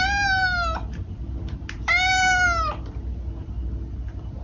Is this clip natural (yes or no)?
yes